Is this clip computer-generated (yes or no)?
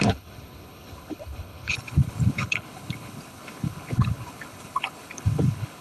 yes